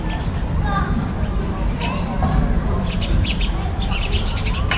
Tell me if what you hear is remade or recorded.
recorded